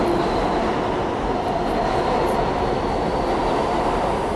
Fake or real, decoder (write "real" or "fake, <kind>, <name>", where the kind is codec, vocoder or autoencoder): real